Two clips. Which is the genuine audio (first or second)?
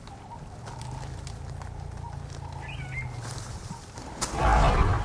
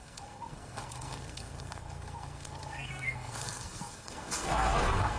first